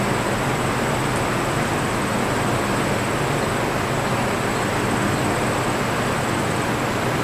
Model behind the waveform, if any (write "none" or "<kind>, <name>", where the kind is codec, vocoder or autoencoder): none